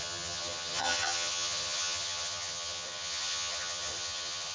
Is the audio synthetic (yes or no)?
yes